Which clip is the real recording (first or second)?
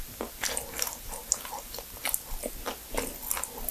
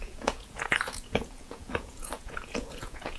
first